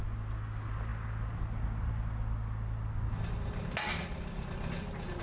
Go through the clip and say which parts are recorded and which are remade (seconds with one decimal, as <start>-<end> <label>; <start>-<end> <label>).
0.0-5.2 recorded